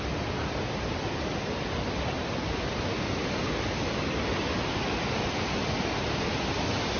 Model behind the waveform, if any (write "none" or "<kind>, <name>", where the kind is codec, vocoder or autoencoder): none